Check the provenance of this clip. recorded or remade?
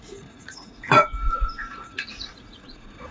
remade